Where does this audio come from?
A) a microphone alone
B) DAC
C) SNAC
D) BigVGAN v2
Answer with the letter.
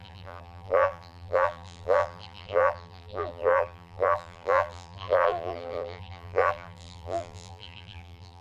D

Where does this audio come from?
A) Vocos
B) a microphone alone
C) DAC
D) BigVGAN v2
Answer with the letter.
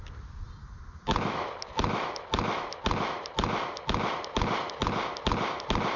B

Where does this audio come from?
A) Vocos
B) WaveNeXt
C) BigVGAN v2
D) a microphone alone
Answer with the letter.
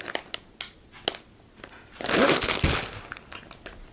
D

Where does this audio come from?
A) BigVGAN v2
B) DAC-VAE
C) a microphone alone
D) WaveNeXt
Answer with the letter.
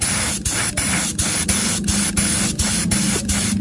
C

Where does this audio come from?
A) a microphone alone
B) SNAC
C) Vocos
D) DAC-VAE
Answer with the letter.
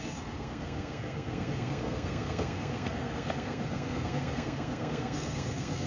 B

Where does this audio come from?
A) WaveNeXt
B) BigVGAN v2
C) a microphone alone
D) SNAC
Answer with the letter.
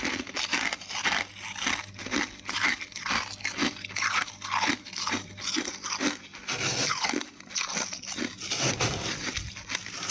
C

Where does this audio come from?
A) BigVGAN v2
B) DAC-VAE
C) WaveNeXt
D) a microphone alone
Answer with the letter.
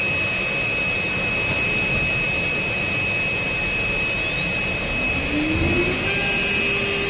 D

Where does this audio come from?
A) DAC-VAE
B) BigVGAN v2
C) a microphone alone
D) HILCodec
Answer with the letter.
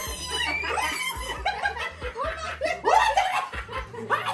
B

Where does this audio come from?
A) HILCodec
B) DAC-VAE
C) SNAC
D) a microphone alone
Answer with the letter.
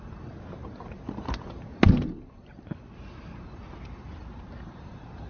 D